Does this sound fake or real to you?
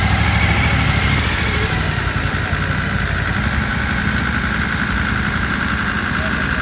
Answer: real